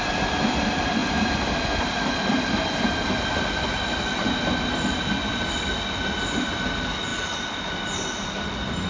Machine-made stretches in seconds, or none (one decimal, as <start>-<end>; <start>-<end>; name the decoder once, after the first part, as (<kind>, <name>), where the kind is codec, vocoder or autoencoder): none